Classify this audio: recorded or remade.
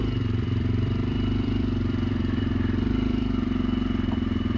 remade